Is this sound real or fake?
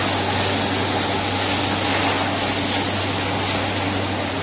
real